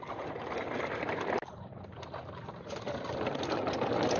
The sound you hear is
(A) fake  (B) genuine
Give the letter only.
B